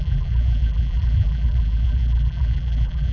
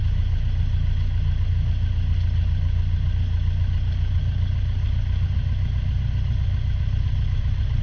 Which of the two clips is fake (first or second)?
first